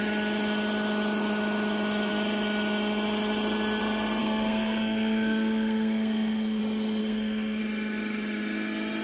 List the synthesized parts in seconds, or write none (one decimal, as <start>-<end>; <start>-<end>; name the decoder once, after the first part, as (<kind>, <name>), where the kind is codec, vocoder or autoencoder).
4.2-6.6 (codec, SNAC); 7.0-7.6